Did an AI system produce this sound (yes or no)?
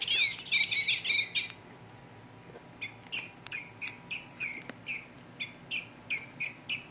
no